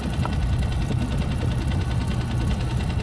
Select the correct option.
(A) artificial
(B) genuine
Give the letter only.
B